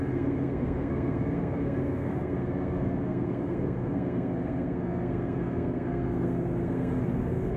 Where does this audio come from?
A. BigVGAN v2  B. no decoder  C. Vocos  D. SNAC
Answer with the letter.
D